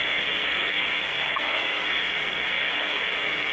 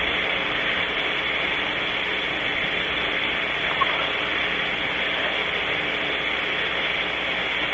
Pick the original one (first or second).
second